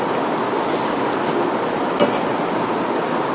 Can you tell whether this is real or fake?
real